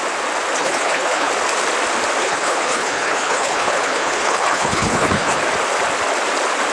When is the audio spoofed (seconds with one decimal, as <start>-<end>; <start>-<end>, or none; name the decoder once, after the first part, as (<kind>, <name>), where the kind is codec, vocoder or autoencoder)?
0.6-1.3 (codec, HILCodec); 2.2-5.4